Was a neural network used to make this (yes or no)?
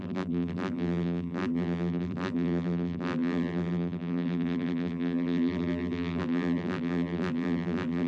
yes